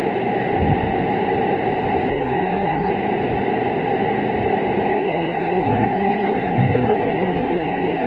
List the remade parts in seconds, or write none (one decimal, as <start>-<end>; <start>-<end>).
2.1-2.9; 4.9-8.1